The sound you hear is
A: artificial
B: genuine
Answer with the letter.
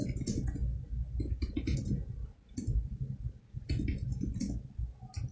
B